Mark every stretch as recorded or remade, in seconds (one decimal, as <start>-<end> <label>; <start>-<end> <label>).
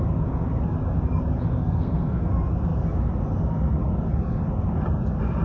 0.0-1.6 recorded; 1.6-2.3 remade; 2.3-5.4 recorded